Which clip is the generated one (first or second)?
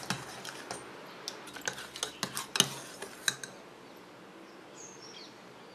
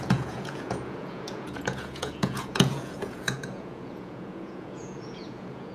second